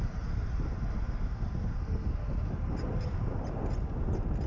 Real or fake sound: real